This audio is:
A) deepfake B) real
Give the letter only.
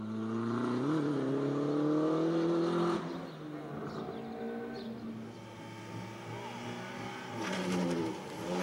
B